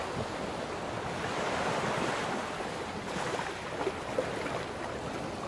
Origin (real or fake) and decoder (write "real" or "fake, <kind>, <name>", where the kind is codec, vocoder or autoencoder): real